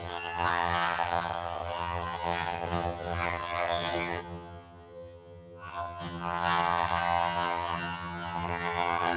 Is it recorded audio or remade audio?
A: remade